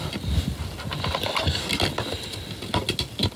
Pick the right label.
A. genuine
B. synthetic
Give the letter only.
A